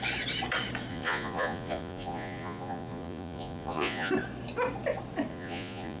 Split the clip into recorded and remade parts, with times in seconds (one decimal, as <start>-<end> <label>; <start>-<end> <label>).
0.0-0.9 recorded; 0.9-4.1 remade; 4.1-5.3 recorded; 5.3-6.0 remade